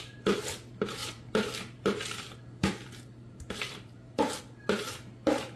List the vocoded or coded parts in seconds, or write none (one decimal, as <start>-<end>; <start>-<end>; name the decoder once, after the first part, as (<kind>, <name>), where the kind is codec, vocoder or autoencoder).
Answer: 1.0-4.4 (vocoder, BigVGAN v2)